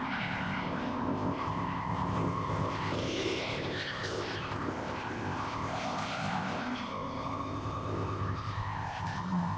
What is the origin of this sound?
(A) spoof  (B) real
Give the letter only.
A